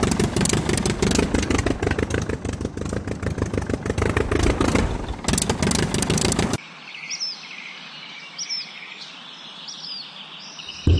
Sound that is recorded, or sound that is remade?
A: recorded